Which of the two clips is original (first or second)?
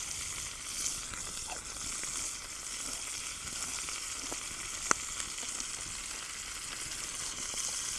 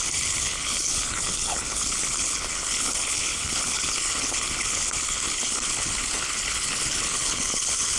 first